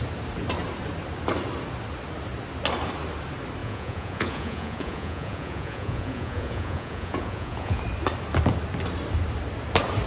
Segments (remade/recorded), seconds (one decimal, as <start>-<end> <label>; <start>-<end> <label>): 0.0-3.6 recorded; 3.6-7.8 remade; 7.8-10.1 recorded